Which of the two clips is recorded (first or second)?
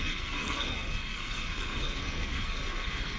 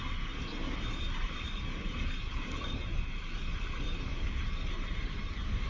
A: second